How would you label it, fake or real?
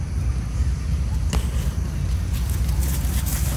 real